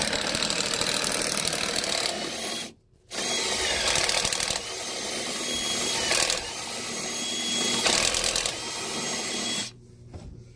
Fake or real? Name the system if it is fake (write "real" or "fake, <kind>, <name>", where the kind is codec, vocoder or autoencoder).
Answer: fake, vocoder, BigVGAN v2